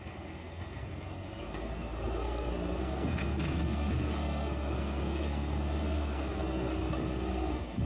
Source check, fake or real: fake